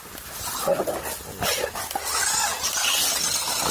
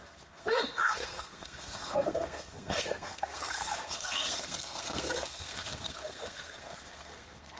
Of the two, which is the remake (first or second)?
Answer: second